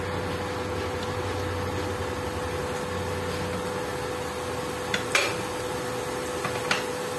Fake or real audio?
real